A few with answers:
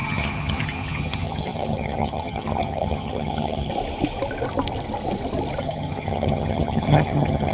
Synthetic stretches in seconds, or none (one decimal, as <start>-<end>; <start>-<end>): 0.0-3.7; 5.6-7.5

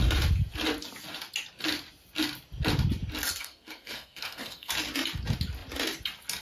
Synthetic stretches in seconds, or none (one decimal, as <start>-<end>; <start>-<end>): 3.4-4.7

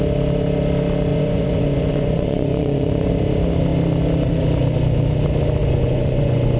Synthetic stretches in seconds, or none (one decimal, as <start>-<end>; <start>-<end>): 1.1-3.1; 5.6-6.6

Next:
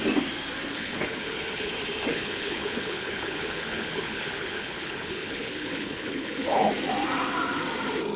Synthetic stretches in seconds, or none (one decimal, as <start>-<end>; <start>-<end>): 0.7-1.7; 2.1-6.7

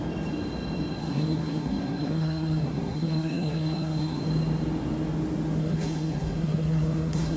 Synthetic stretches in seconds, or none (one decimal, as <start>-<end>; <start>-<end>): 1.0-4.2; 5.6-7.4